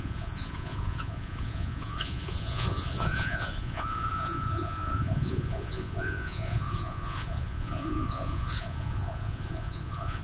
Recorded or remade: remade